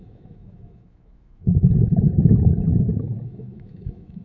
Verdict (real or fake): fake